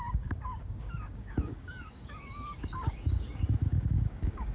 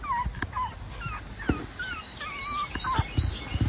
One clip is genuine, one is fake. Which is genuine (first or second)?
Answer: second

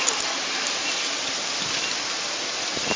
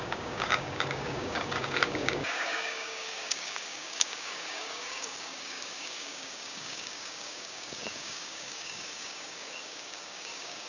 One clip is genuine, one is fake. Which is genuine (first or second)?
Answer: first